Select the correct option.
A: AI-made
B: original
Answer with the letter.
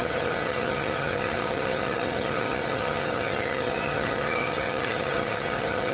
A